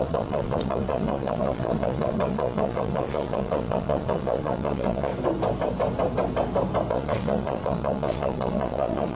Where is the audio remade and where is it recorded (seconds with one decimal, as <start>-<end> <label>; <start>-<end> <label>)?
0.0-5.1 remade; 5.1-6.9 recorded; 6.9-9.2 remade